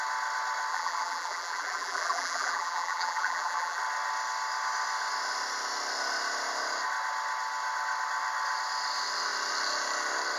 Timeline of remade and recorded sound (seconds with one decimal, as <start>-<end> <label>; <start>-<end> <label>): 0.0-0.7 recorded; 0.7-3.8 remade; 3.8-10.4 recorded